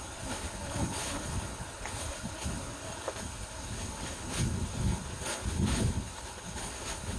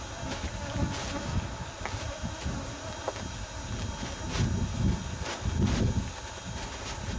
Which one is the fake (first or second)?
first